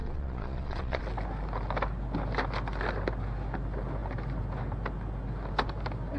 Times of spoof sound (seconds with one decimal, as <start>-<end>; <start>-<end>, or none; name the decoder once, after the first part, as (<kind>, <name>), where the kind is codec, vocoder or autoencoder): 0.0-1.0 (vocoder, Vocos)